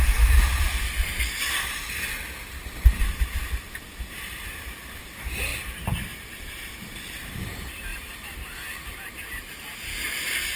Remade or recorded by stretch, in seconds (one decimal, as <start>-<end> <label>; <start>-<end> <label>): 0.0-1.1 remade; 1.1-2.4 recorded; 2.4-9.9 remade; 9.9-10.6 recorded